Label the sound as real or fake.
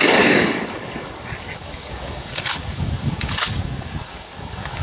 fake